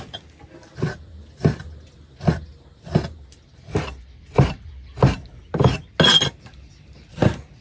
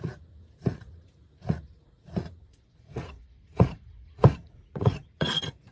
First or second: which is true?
first